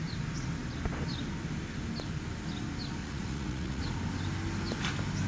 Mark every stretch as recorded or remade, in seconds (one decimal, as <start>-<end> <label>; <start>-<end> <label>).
0.0-3.0 recorded; 3.0-3.8 remade; 3.8-5.3 recorded